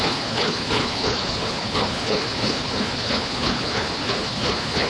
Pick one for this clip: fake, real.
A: fake